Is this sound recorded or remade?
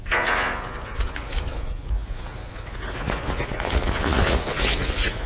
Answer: remade